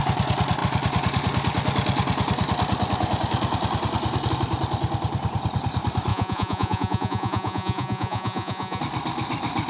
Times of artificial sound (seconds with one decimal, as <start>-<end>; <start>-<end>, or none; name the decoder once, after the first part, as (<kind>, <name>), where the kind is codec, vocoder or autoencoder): 6.1-8.8 (vocoder, Vocos)